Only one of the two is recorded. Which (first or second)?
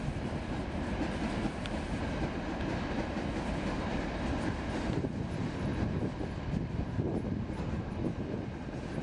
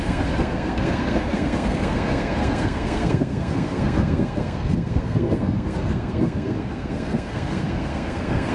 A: first